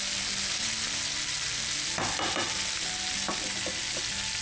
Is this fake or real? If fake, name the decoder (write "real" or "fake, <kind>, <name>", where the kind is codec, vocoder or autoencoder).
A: real